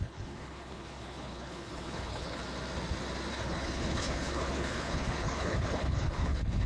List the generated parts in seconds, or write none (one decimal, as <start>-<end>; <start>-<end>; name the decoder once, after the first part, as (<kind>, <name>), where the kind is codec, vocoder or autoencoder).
0.0-2.4 (codec, HILCodec); 3.3-6.7